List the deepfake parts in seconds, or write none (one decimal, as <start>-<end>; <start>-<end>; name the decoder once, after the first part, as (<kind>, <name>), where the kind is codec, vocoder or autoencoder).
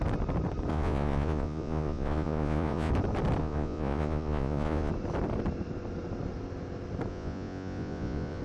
0.7-2.9 (vocoder, Vocos); 3.4-4.9; 7.1-8.4